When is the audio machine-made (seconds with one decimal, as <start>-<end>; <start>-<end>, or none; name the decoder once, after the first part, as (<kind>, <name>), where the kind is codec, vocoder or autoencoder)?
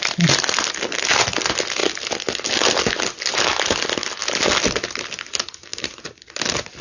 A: none